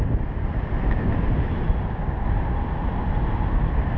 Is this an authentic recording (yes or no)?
yes